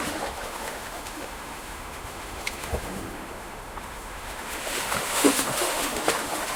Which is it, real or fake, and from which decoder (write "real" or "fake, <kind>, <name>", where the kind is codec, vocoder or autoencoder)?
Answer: fake, autoencoder, DAC-VAE